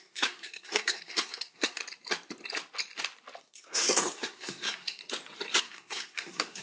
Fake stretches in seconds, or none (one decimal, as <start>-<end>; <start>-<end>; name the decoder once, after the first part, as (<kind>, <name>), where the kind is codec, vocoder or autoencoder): 0.0-1.8 (codec, SNAC); 3.4-5.0; 5.6-6.6